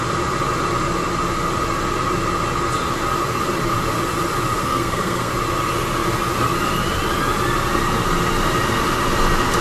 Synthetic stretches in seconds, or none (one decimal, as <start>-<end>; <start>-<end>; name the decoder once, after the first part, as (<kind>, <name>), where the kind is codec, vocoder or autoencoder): 4.6-5.3 (codec, SNAC)

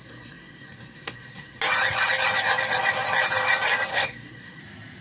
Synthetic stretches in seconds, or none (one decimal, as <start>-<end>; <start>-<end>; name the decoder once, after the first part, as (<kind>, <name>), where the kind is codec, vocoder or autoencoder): 0.0-1.6 (codec, SNAC); 3.9-4.6

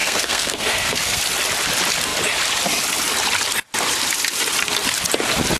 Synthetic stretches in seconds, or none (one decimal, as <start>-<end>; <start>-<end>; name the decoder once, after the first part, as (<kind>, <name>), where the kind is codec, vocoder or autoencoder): 0.0-1.2 (codec, SNAC)

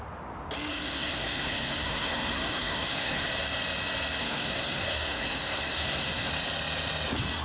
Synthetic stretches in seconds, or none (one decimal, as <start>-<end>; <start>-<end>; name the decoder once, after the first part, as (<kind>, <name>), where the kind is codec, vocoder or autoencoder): 0.7-3.3 (codec, SNAC); 4.2-6.3

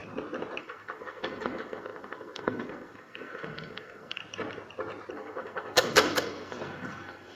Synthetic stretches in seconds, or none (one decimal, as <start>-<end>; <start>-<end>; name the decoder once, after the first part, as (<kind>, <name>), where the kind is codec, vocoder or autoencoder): 0.6-4.2 (codec, SNAC); 5.1-7.3

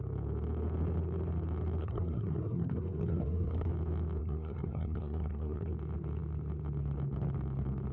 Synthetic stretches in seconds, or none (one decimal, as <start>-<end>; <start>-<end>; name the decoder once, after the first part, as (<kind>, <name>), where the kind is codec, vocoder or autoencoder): 1.8-3.7 (codec, SNAC); 4.2-5.7